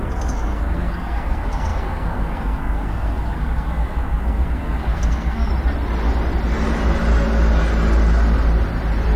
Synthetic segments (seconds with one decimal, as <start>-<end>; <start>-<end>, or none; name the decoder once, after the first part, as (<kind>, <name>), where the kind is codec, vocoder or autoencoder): 0.0-5.5 (codec, SNAC)